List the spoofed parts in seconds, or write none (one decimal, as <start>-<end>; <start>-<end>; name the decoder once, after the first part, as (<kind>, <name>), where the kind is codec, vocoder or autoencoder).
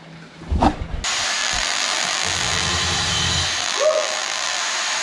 1.4-2.7 (vocoder, BigVGAN v2); 3.6-4.6